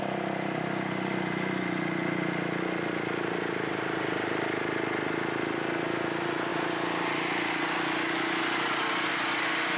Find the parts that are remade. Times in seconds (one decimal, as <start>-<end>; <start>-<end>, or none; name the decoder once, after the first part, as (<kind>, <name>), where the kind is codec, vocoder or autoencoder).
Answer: none